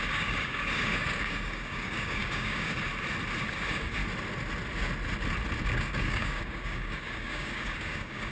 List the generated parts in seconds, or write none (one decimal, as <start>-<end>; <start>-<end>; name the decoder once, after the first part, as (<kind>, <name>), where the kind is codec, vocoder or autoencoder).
0.0-2.9 (codec, DAC); 3.5-4.0; 5.6-8.3

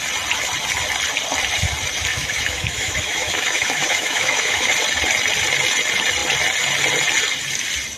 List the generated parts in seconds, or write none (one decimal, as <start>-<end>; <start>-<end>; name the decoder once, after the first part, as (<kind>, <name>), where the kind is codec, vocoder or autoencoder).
2.1-4.7 (autoencoder, DAC-VAE)

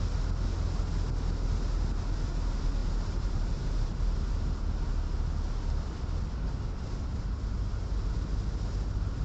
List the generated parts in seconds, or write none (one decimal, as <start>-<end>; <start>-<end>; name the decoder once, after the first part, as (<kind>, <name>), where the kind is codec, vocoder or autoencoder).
2.8-4.3 (vocoder, BigVGAN v2)